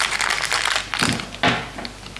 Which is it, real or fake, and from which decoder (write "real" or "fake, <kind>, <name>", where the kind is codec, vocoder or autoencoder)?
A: real